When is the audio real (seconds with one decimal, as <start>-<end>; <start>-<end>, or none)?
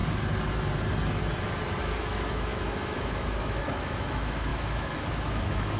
0.0-1.8